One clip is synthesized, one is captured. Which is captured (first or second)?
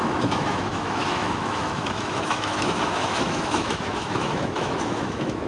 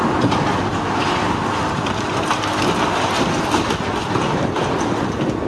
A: second